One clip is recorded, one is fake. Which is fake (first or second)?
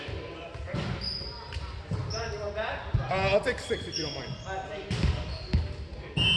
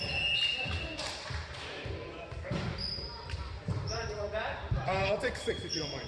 second